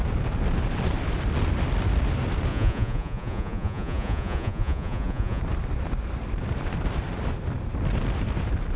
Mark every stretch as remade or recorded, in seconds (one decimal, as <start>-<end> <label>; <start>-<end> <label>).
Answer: 0.0-2.5 recorded; 2.5-5.4 remade; 5.4-8.8 recorded